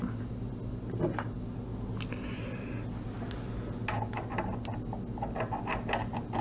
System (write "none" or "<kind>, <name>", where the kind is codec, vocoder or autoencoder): none